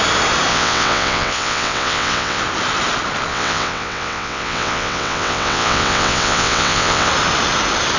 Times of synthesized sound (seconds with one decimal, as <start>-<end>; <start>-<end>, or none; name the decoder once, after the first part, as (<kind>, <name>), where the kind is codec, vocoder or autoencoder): 0.5-2.4 (vocoder, WaveNeXt); 3.3-7.1